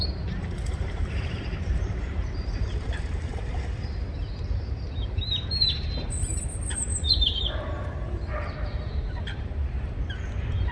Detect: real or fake fake